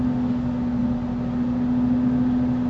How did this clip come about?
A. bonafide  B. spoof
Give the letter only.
A